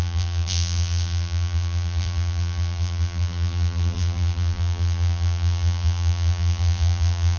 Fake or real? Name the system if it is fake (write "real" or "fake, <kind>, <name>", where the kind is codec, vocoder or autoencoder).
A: fake, vocoder, BigVGAN v2